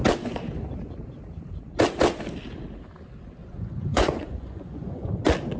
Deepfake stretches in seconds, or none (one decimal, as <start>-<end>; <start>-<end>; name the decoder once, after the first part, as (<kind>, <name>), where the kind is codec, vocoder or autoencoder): 3.4-5.1 (vocoder, Vocos)